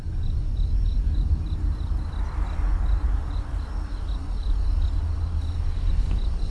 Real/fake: real